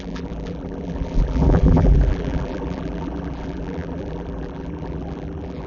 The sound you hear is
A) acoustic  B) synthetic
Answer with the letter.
B